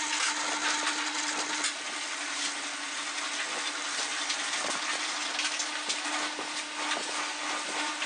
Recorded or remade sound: recorded